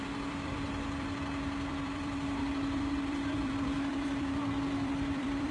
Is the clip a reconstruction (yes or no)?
yes